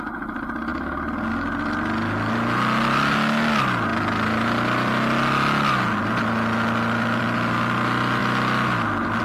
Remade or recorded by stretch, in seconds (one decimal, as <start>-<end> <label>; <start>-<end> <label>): 0.0-9.2 recorded